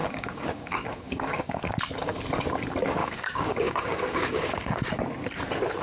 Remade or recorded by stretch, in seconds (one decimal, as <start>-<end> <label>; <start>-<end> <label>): 0.0-1.6 remade; 1.6-3.0 recorded; 3.0-4.9 remade; 4.9-5.8 recorded